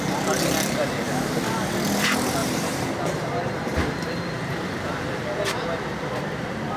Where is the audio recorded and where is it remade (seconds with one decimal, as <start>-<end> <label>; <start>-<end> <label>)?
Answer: 0.0-2.4 recorded; 2.4-5.2 remade; 5.2-6.8 recorded